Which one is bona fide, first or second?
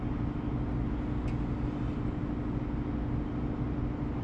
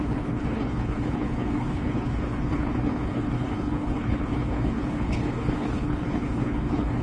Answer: first